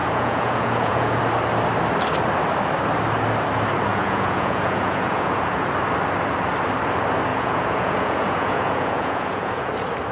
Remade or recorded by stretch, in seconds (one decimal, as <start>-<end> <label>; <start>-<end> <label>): 0.0-1.2 remade; 1.2-3.9 recorded; 3.9-5.7 remade; 5.7-7.3 recorded; 7.3-9.7 remade; 9.7-10.1 recorded